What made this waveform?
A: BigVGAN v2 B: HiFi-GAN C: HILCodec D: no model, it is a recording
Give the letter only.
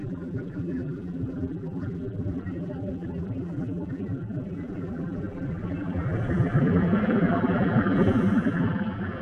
A